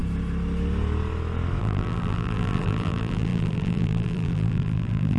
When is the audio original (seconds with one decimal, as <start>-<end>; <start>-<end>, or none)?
0.0-1.6